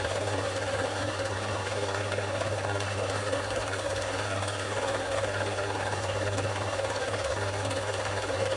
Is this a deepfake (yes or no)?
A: yes